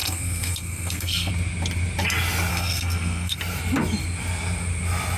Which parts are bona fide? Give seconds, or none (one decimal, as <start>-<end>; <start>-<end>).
1.3-2.5; 3.4-5.2